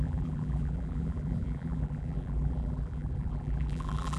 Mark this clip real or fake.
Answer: fake